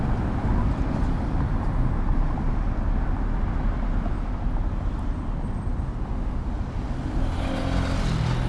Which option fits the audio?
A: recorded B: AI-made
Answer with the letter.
A